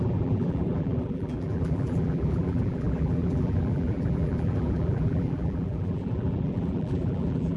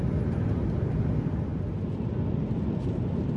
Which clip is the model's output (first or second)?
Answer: first